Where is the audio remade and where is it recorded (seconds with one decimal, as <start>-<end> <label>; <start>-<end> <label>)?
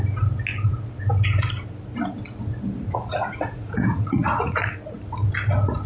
0.0-2.8 recorded; 2.8-4.6 remade; 4.6-5.9 recorded